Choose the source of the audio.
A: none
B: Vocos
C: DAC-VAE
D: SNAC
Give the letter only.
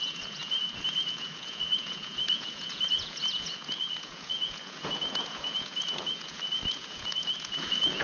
B